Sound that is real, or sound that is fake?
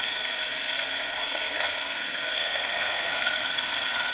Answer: fake